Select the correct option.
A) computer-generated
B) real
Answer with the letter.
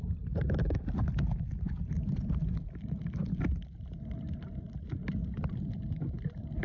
B